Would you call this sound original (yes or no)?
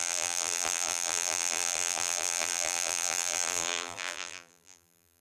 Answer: no